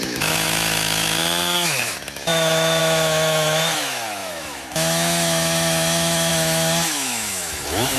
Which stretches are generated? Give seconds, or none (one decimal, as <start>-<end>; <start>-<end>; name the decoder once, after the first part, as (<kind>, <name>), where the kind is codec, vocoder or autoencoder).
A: 0.0-8.0 (autoencoder, DAC-VAE)